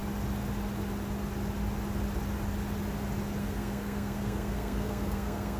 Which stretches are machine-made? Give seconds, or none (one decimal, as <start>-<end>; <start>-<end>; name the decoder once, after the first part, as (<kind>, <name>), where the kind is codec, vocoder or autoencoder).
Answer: 3.4-5.6 (codec, SNAC)